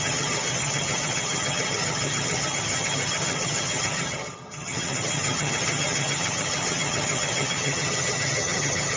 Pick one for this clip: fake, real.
fake